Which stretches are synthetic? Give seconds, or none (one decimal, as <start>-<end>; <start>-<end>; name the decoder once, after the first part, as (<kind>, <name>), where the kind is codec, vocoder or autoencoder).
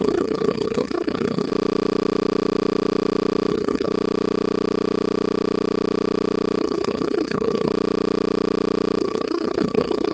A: 0.0-1.5 (codec, SNAC); 3.5-3.9; 6.6-7.7; 9.0-10.1